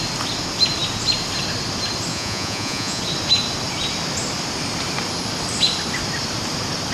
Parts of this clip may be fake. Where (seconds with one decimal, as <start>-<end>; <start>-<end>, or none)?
2.1-3.0